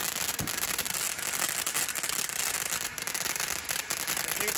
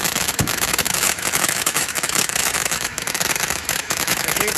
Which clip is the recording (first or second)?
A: first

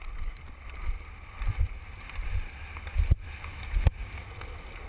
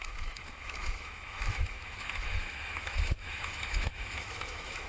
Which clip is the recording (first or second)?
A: first